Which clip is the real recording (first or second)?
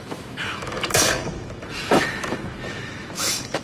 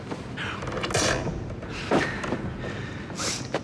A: second